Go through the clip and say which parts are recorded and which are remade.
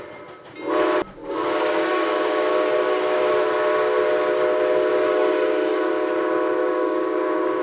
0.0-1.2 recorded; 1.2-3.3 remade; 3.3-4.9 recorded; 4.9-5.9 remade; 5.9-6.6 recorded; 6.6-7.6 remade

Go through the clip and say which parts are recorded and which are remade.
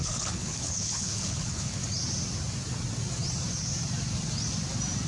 0.0-1.8 remade; 1.8-5.1 recorded